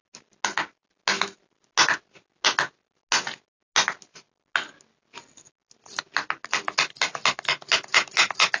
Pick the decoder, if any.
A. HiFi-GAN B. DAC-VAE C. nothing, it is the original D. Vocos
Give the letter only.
C